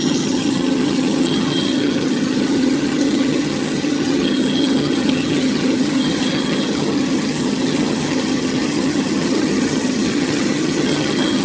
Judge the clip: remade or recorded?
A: remade